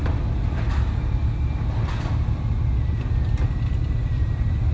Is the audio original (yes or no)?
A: yes